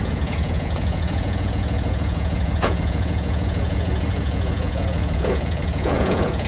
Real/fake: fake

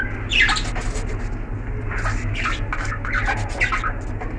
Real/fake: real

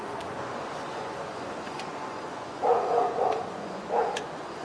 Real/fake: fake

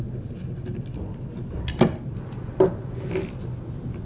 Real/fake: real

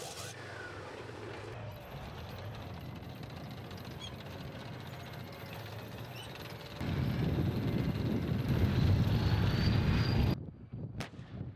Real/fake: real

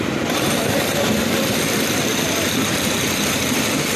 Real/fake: fake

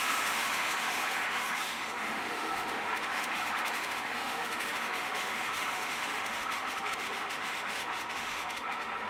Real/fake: fake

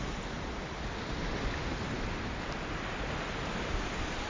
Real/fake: real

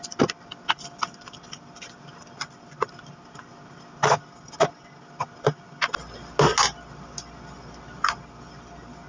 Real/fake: real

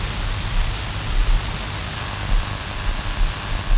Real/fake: real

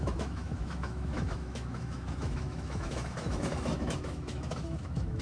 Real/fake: fake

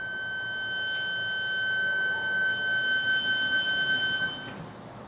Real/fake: real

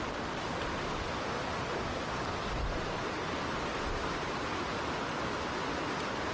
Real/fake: real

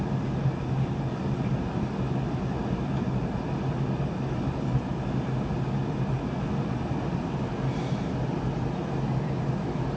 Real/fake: real